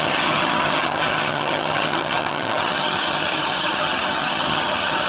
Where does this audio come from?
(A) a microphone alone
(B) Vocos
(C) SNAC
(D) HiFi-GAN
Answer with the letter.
D